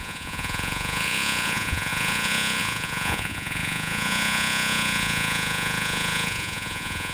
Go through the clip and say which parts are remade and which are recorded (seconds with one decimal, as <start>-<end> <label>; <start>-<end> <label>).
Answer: 0.0-7.1 remade